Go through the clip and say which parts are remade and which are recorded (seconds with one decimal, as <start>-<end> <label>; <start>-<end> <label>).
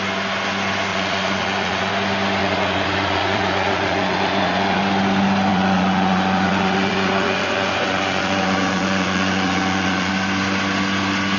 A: 0.0-0.9 recorded; 0.9-1.9 remade; 1.9-2.4 recorded; 2.4-4.8 remade; 4.8-5.5 recorded; 5.5-10.1 remade; 10.1-11.4 recorded